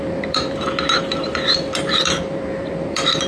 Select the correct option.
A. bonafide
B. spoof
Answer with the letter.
B